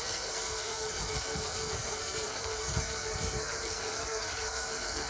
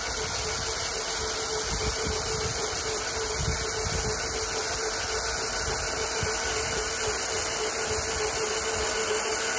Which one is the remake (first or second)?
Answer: first